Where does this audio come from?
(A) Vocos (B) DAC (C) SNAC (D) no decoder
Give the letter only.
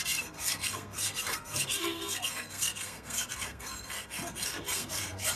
C